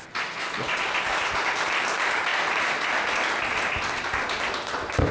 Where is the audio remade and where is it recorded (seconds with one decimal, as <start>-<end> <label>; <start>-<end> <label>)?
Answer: 0.0-5.1 recorded